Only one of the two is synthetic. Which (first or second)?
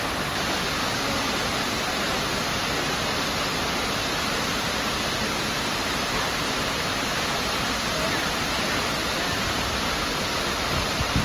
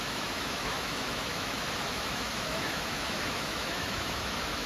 second